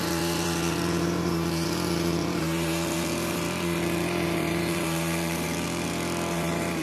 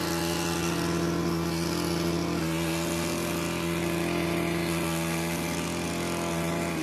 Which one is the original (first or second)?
second